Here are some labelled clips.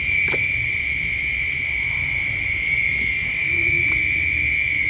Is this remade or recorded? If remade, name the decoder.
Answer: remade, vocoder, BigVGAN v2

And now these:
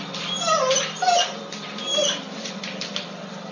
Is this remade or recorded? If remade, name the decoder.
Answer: remade, vocoder, BigVGAN v2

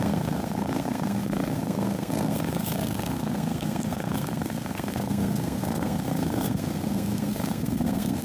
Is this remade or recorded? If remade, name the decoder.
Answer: remade, codec, SNAC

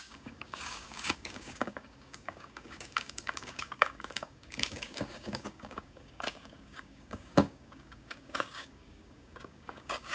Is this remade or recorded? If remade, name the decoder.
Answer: remade, codec, DAC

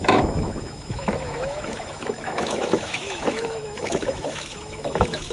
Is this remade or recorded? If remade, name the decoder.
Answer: remade, autoencoder, DAC-VAE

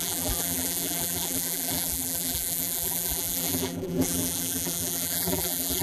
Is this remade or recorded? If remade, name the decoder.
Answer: remade, vocoder, BigVGAN v2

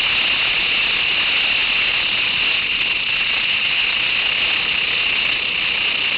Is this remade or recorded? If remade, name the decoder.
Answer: recorded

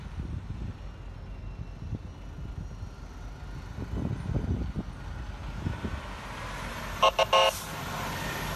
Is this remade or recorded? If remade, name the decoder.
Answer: recorded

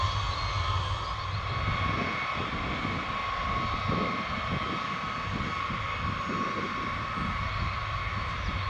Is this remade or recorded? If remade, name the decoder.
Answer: recorded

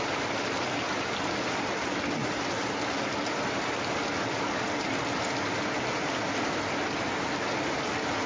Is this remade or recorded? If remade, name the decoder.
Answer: recorded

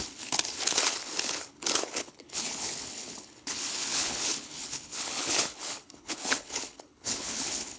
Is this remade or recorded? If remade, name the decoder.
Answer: remade, codec, HILCodec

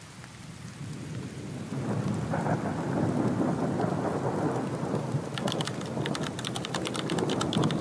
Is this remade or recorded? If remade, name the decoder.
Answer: recorded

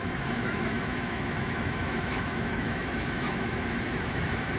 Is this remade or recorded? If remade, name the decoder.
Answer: remade, autoencoder, DAC-VAE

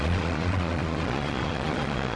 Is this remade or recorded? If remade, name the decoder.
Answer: remade, vocoder, Vocos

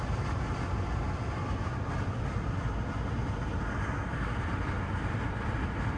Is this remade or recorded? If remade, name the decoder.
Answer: recorded